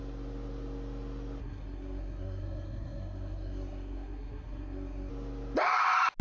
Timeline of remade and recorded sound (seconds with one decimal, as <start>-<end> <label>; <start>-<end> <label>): 0.0-1.4 recorded; 1.4-5.1 remade; 5.1-6.2 recorded